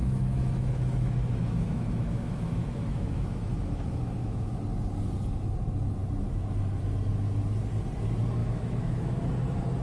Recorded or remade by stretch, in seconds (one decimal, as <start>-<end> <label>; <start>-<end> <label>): 0.0-4.6 remade; 4.6-8.4 recorded; 8.4-9.3 remade; 9.3-9.8 recorded